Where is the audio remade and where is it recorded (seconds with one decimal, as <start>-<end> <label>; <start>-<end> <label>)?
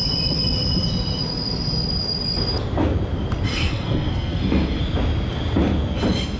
0.0-3.5 recorded; 3.5-4.8 remade; 4.8-6.4 recorded